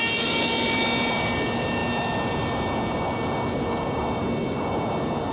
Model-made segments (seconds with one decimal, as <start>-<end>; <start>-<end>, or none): none

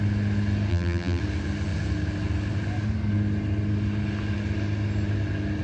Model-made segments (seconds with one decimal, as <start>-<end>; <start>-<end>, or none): 0.7-1.2

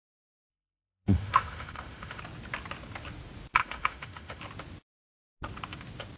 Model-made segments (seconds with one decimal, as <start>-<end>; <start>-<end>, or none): 0.5-2.2; 3.6-4.4

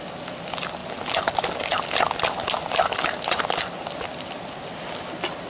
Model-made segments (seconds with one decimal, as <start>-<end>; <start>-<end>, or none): none